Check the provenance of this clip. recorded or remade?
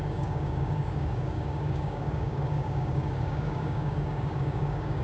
remade